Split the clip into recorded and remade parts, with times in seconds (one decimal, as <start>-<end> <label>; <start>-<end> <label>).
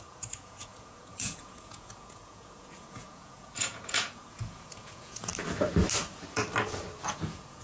0.0-5.3 remade; 5.3-7.1 recorded; 7.1-7.6 remade